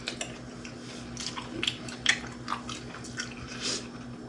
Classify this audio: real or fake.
real